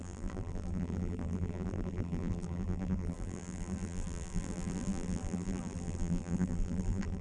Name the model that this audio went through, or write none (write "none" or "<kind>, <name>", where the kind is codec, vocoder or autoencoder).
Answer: vocoder, BigVGAN v2